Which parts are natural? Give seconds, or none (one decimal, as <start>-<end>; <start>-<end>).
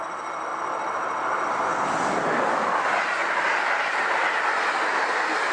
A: 0.0-5.5